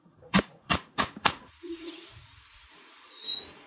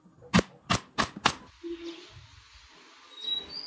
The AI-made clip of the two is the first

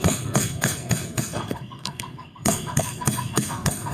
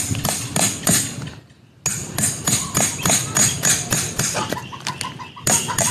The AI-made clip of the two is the first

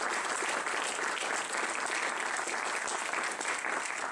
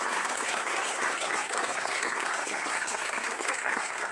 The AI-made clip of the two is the second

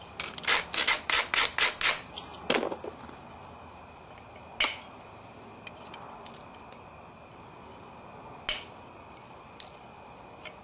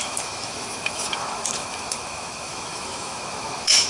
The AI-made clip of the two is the second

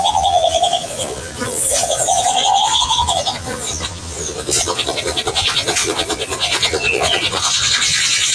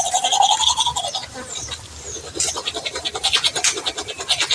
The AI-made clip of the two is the first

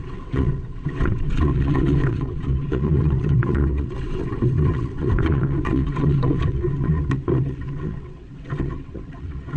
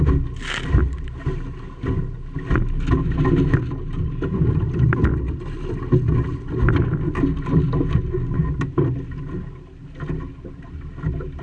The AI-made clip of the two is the first